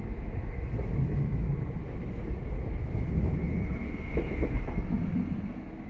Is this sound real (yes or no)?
no